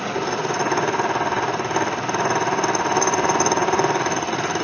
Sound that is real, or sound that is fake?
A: real